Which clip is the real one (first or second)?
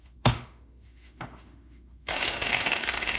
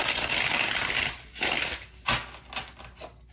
second